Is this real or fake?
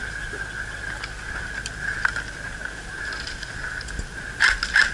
real